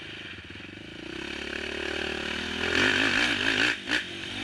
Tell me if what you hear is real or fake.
real